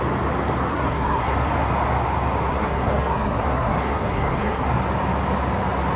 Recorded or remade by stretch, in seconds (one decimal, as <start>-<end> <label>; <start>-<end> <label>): 0.0-0.7 recorded; 0.7-1.5 remade; 1.5-2.5 recorded; 2.5-4.8 remade; 4.8-6.0 recorded